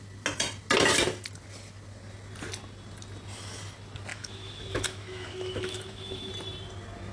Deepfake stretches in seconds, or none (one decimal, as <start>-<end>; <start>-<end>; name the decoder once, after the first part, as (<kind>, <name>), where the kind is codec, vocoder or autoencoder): 4.1-6.3 (autoencoder, DAC-VAE)